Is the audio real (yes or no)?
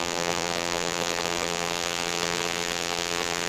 no